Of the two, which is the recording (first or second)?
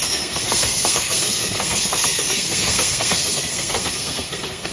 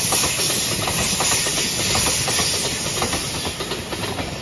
second